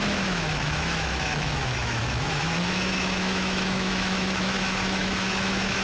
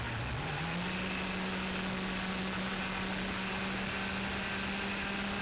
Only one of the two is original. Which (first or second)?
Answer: second